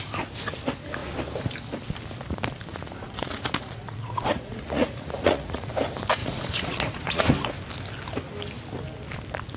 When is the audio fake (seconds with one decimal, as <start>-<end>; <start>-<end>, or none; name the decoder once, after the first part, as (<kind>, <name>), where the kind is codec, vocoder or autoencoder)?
2.7-5.7 (vocoder, Vocos); 6.2-7.3